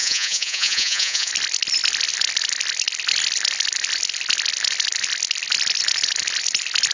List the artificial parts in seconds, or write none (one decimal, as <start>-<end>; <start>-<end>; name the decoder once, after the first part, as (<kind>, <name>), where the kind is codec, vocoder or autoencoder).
0.0-1.3 (vocoder, Vocos)